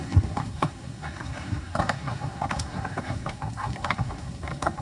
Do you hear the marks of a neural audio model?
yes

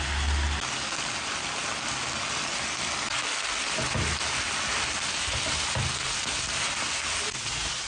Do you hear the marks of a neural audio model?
no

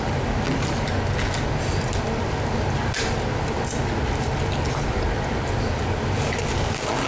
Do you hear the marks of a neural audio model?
no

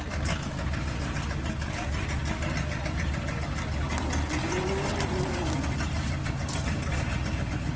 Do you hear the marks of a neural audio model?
no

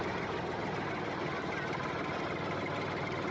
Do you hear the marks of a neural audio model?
yes